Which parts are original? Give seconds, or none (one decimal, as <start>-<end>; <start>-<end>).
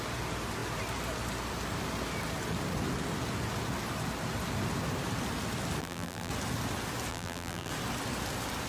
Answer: 0.0-5.8; 6.3-7.1; 7.7-8.7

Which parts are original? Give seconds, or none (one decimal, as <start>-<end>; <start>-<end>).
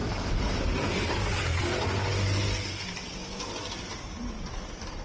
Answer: 1.6-5.0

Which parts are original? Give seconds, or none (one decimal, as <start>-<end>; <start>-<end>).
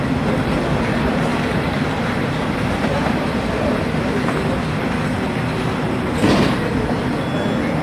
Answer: 0.0-1.3; 3.3-7.8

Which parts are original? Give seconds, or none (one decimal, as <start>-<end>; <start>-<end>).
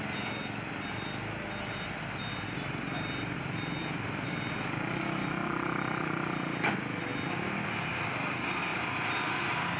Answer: 0.0-5.2; 5.8-8.7; 9.4-9.8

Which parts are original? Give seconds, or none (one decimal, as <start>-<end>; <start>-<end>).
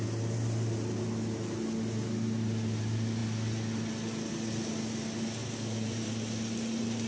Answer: 0.0-5.4; 6.1-7.1